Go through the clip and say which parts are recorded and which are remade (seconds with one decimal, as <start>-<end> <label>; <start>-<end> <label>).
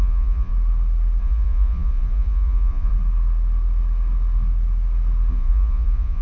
0.0-0.5 remade; 0.5-1.2 recorded; 1.2-2.9 remade; 2.9-5.3 recorded; 5.3-6.2 remade